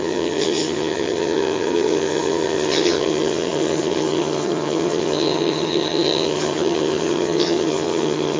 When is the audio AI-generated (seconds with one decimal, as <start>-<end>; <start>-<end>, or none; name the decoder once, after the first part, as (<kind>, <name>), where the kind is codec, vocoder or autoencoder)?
0.0-8.4 (vocoder, HiFi-GAN)